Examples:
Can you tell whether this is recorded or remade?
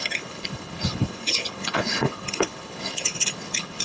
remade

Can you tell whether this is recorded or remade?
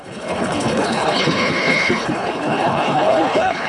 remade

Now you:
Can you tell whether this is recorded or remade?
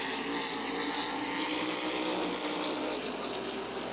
recorded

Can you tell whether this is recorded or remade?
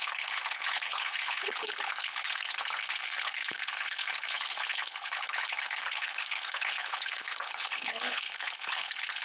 remade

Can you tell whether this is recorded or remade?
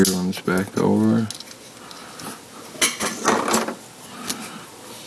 recorded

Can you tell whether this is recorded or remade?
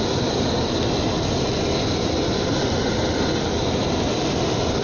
recorded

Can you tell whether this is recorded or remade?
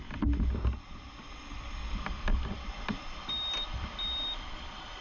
recorded